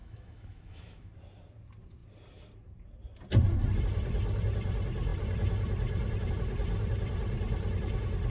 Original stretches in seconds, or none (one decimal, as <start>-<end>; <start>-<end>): 1.1-8.3